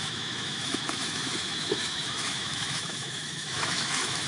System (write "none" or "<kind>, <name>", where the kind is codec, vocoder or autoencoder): autoencoder, DAC-VAE